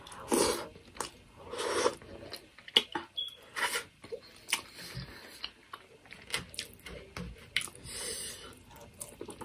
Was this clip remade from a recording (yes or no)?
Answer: no